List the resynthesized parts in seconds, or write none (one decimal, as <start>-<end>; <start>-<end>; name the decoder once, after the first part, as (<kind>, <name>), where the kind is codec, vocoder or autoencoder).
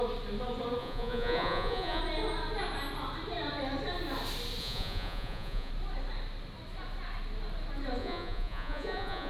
0.8-2.0 (vocoder, Vocos); 4.6-5.7; 8.0-9.3